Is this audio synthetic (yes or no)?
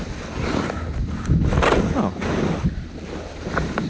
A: no